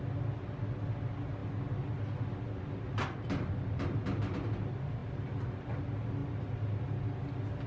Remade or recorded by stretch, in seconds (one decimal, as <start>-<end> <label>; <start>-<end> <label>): 0.0-7.7 recorded